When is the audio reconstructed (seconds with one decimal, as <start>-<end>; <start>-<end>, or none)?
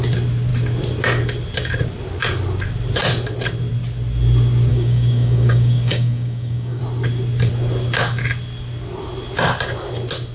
4.7-6.8